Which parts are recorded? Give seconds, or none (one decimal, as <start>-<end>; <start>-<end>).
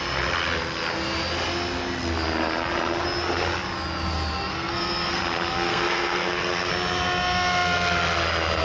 0.0-4.5; 5.2-5.7; 6.7-8.6